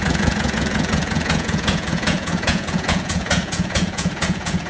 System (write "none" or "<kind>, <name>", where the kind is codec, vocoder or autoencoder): vocoder, Vocos